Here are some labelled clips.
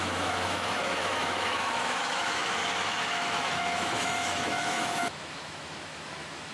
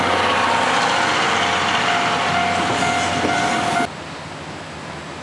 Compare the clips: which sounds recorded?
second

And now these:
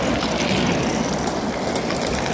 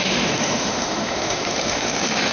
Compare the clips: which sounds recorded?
first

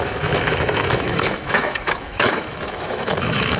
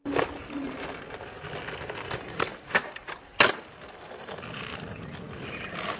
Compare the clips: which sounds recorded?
second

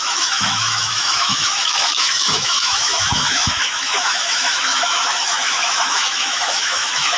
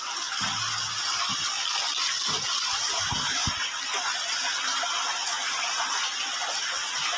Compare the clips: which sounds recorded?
second